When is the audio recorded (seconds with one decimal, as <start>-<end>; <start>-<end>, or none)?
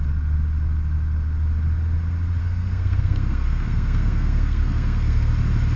0.0-2.4; 5.3-5.8